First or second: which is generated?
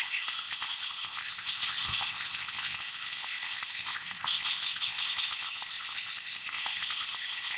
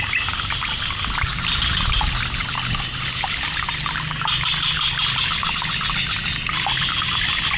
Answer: first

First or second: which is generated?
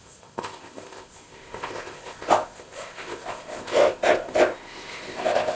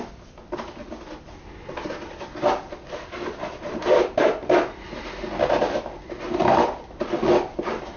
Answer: first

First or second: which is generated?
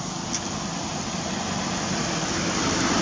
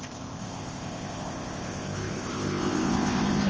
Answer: second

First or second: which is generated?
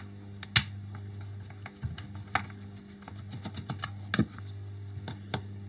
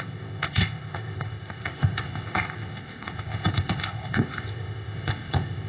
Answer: second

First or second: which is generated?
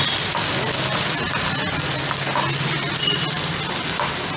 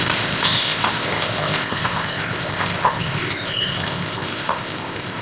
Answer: second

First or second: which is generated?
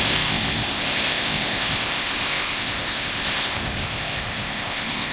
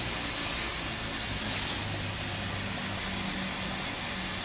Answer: first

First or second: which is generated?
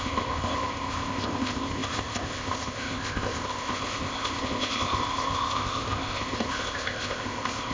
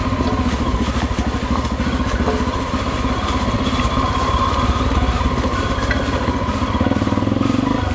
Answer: first